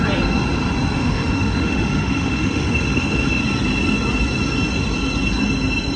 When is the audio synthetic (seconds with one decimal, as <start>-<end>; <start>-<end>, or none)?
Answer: 1.0-3.4